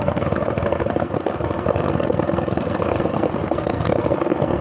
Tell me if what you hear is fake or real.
fake